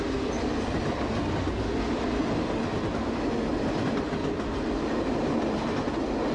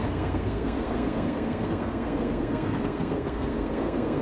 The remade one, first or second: second